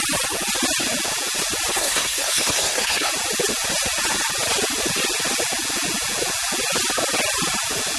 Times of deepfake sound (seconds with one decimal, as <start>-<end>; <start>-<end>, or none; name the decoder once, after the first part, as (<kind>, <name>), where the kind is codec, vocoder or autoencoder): 1.7-3.1 (codec, SNAC)